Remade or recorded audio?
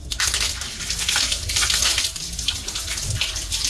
remade